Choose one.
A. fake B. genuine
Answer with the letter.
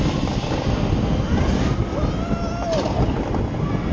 B